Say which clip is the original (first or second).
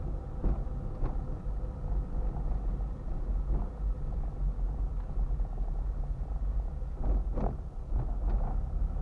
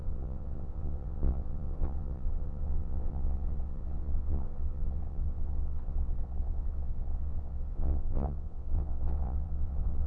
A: first